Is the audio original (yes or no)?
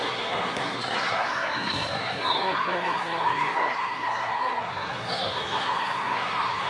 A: no